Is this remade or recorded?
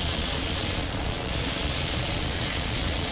remade